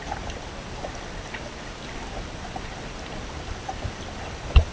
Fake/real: real